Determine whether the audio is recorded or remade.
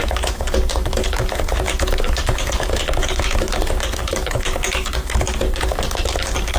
remade